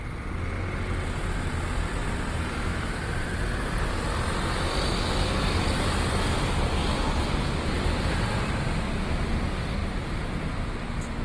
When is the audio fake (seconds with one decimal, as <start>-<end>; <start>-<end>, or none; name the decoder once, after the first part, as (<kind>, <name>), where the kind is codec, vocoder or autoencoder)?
2.0-3.3 (vocoder, BigVGAN v2)